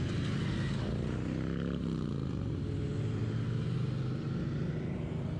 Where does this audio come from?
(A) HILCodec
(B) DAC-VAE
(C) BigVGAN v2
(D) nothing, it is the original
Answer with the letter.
D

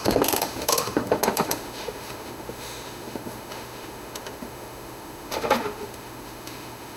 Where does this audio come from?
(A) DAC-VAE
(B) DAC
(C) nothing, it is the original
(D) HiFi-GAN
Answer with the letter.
A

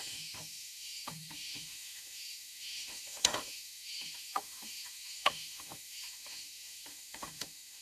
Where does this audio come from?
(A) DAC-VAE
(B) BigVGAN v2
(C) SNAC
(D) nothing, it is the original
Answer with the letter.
A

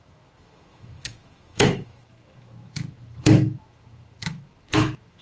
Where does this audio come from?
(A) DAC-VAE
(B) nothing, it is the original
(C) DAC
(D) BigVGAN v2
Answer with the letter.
A